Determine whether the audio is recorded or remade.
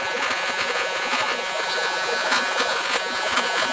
remade